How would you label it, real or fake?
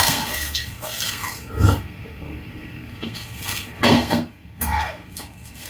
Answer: fake